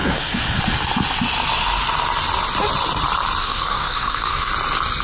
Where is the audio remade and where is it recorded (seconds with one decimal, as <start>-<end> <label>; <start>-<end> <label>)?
0.0-0.6 remade; 0.6-3.4 recorded; 3.4-4.5 remade; 4.5-5.0 recorded